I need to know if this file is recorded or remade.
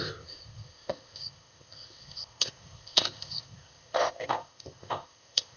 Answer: remade